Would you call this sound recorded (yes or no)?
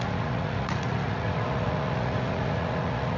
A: no